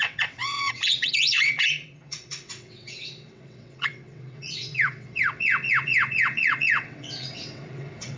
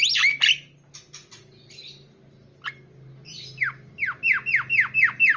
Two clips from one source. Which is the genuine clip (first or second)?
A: second